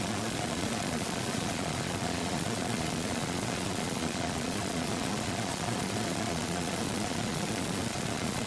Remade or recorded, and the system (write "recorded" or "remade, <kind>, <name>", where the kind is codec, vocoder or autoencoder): remade, vocoder, Vocos